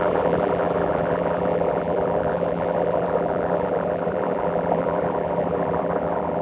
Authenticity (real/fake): fake